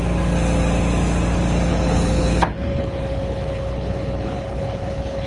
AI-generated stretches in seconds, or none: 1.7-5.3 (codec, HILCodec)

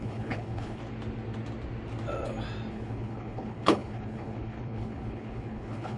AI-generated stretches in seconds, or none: 0.0-0.8 (codec, HILCodec); 2.7-6.0

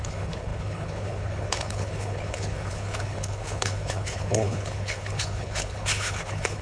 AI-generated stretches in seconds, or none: 0.0-6.6 (codec, HILCodec)